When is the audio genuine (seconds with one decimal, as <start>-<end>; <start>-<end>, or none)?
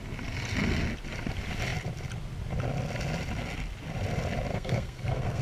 0.0-4.5